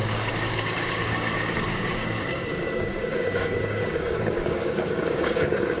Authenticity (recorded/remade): remade